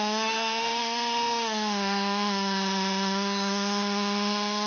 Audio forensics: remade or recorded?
remade